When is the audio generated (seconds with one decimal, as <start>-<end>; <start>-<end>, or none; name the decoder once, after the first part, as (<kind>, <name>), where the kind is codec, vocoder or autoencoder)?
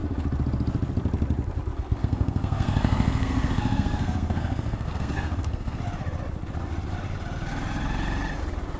2.0-5.8 (codec, SNAC)